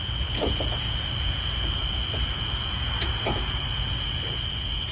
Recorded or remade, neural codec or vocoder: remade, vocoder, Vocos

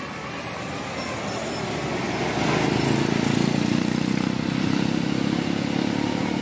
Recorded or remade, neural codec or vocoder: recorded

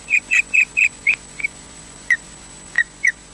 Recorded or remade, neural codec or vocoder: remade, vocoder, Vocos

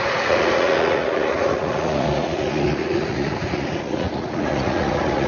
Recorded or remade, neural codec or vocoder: remade, vocoder, Vocos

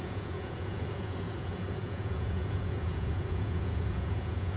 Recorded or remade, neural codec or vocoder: remade, vocoder, Vocos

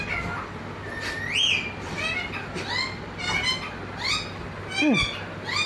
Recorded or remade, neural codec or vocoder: recorded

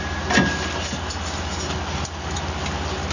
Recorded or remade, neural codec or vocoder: recorded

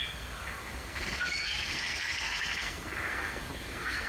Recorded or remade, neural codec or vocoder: remade, codec, SNAC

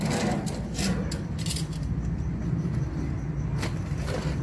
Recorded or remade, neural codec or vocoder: recorded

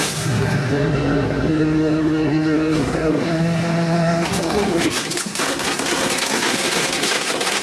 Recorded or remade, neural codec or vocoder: remade, codec, SNAC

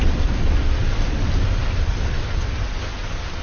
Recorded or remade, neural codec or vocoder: recorded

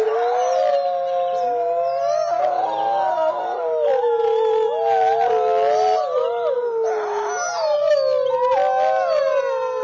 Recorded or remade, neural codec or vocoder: recorded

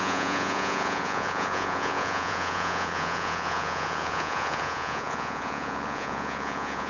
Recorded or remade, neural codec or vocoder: remade, vocoder, Vocos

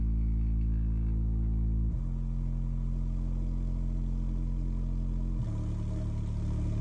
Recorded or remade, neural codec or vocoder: recorded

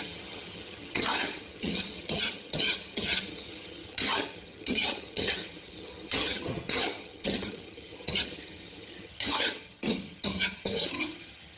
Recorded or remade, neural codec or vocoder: remade, vocoder, HiFi-GAN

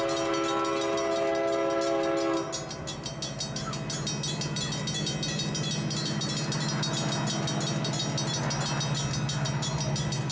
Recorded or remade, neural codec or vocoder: recorded